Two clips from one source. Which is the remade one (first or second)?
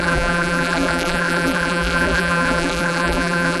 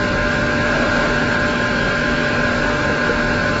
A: first